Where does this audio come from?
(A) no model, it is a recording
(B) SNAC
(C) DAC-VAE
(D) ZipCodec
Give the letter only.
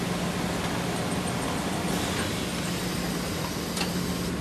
A